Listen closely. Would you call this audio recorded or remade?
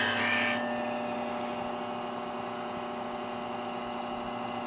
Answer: recorded